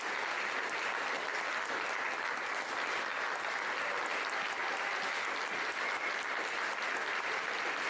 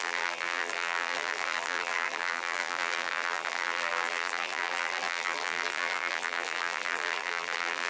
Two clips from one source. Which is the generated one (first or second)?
second